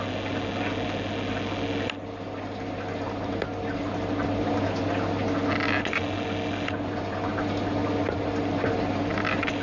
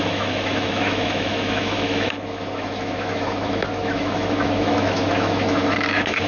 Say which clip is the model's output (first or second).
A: second